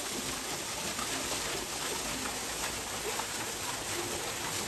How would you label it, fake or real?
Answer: real